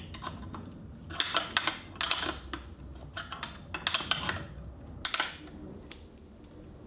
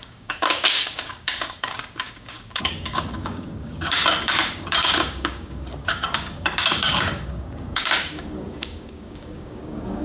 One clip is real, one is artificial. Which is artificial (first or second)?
second